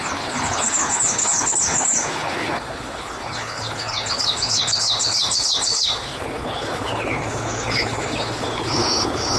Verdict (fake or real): fake